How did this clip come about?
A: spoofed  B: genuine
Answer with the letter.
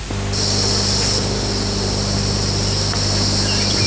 B